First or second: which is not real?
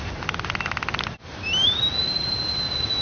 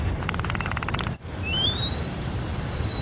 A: second